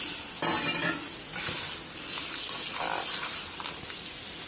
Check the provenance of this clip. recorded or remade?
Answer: recorded